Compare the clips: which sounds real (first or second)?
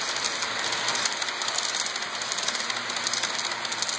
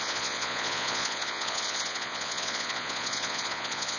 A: first